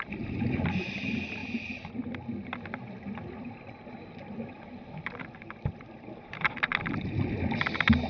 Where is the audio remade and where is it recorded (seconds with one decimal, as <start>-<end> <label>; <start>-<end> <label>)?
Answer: 0.0-1.4 remade; 1.4-3.4 recorded; 3.4-8.1 remade